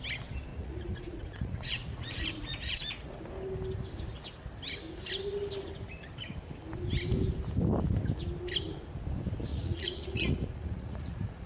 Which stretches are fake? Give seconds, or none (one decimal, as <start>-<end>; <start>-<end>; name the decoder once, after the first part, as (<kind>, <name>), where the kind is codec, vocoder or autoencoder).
0.5-3.2 (vocoder, Vocos); 9.5-11.5